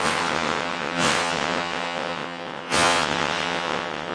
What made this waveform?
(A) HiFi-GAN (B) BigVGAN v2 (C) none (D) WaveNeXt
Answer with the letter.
D